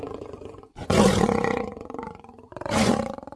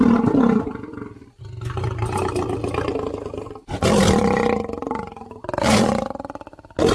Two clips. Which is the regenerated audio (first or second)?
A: first